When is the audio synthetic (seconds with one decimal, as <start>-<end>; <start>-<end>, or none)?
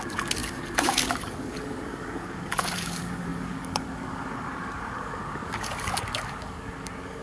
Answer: 0.0-7.2